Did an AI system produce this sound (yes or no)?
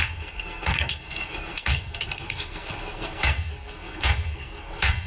yes